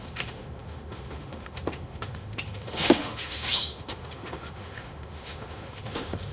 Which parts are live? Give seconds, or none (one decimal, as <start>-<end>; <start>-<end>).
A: none